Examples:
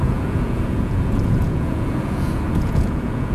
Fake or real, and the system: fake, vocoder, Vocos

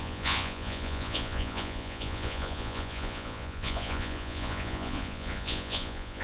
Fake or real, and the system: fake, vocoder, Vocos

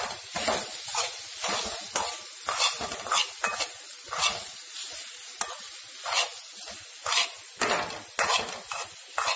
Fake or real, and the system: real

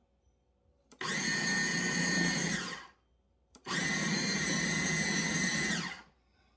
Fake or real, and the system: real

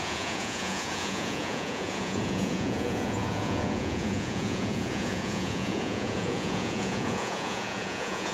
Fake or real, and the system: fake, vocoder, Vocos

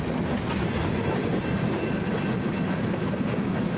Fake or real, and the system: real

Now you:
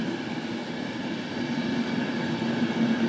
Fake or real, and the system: real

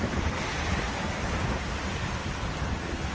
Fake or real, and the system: real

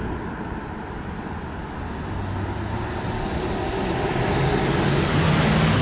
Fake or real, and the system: real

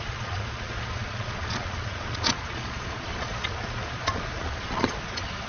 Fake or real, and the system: fake, vocoder, Vocos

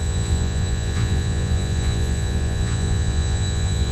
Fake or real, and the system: fake, vocoder, Vocos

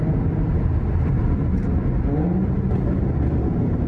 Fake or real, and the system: real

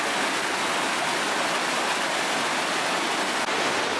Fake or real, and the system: real